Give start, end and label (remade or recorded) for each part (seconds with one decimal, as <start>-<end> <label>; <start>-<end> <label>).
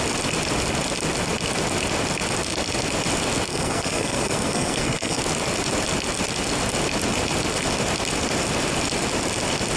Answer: 0.0-3.5 recorded; 3.5-5.2 remade; 5.2-9.8 recorded